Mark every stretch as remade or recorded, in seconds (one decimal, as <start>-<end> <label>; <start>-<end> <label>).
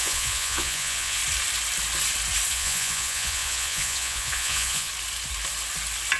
0.0-1.2 remade; 1.2-2.5 recorded; 2.5-4.9 remade; 4.9-6.2 recorded